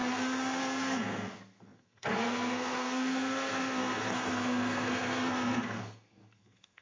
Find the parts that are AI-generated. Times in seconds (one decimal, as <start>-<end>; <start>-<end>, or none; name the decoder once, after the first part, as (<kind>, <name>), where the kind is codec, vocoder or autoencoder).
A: 0.6-6.8 (codec, SNAC)